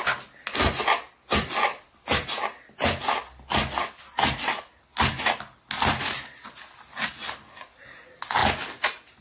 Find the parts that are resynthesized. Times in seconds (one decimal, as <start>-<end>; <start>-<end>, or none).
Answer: none